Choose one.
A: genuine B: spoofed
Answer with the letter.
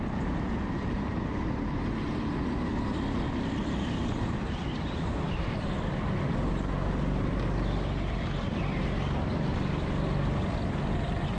A